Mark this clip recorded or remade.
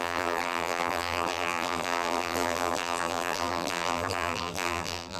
remade